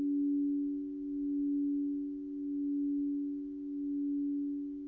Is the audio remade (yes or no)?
no